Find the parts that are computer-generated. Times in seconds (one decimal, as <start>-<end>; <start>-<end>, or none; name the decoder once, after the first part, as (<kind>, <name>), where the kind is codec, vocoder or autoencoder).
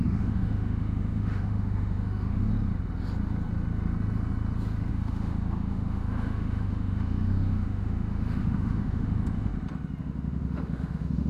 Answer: 0.0-2.5 (autoencoder, DAC-VAE); 4.9-9.5; 10.0-11.3